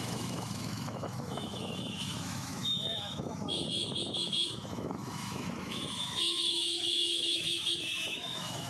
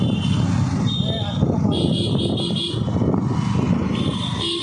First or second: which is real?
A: second